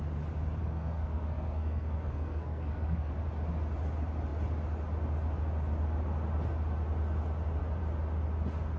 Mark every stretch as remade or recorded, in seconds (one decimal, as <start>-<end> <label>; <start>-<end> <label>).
0.0-0.6 recorded; 0.6-3.1 remade; 3.1-8.8 recorded